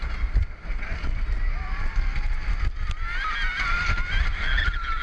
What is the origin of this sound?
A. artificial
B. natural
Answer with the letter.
B